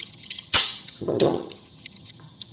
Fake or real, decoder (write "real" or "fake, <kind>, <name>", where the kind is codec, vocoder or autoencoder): fake, vocoder, HiFi-GAN